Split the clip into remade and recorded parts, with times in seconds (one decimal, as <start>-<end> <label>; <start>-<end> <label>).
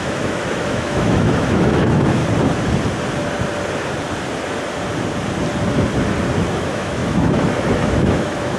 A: 0.0-2.2 remade; 2.2-6.5 recorded; 6.5-8.6 remade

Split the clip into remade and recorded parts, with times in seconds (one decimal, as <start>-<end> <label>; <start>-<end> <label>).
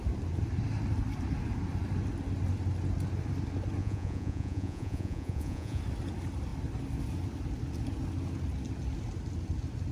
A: 0.0-3.8 recorded; 3.8-5.8 remade; 5.8-9.9 recorded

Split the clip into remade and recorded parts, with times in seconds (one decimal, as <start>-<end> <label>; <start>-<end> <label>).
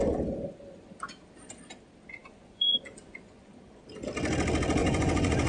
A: 0.0-2.2 recorded; 2.2-3.5 remade; 3.5-4.8 recorded; 4.8-5.5 remade